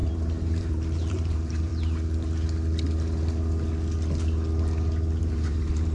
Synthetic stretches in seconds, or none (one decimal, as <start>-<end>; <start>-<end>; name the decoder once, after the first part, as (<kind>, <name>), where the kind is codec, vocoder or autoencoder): 0.0-1.7 (vocoder, BigVGAN v2); 5.2-5.9